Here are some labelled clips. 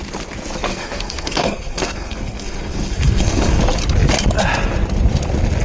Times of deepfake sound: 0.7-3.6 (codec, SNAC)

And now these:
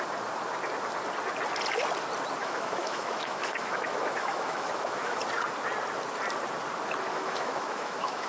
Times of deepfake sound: 2.4-5.2 (autoencoder, DAC-VAE); 7.1-8.3

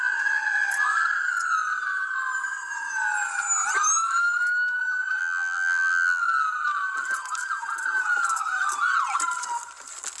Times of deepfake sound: 5.2-6.2 (vocoder, BigVGAN v2)

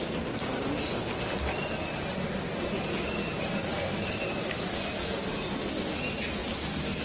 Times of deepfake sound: none

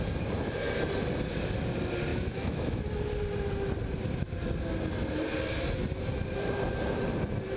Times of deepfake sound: 2.1-2.8 (autoencoder, DAC-VAE)

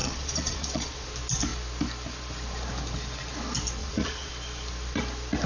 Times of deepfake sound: 0.0-1.1 (vocoder, Vocos); 3.8-4.3